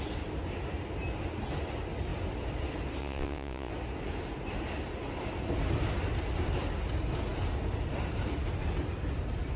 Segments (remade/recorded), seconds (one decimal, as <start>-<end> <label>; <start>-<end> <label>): 0.0-3.0 recorded; 3.0-3.7 remade; 3.7-9.6 recorded

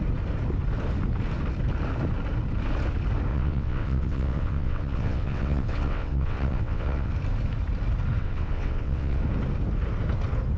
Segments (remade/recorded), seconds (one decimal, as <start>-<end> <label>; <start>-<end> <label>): 0.0-3.3 recorded; 3.3-7.1 remade; 7.1-8.2 recorded; 8.2-9.2 remade; 9.2-10.6 recorded

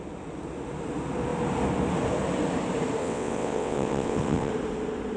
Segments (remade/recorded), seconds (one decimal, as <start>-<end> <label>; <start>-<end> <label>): 0.0-3.0 recorded; 3.0-4.5 remade; 4.5-5.2 recorded

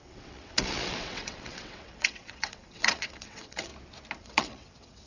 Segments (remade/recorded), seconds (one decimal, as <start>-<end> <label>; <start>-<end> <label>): 0.0-3.7 remade; 3.7-4.2 recorded; 4.2-5.1 remade

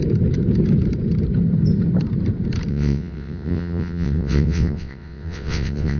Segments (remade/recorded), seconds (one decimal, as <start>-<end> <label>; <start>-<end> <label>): 0.0-2.7 recorded; 2.7-6.0 remade

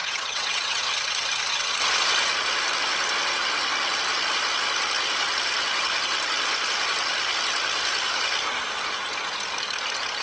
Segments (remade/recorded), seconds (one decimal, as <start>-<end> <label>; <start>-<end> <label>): 0.0-0.8 remade; 0.8-10.2 recorded

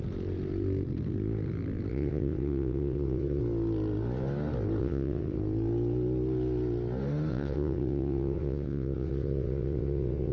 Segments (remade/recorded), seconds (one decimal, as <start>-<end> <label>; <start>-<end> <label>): 0.0-1.9 recorded; 1.9-3.4 remade; 3.4-4.8 recorded; 4.8-5.4 remade; 5.4-7.3 recorded; 7.3-10.3 remade

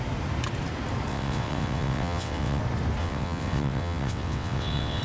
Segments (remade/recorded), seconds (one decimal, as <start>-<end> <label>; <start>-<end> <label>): 0.0-1.1 recorded; 1.1-2.6 remade; 2.6-3.0 recorded; 3.0-5.0 remade